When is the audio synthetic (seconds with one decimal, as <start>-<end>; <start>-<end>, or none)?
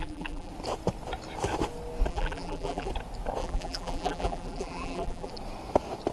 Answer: 0.0-0.5; 2.1-2.9; 3.4-5.3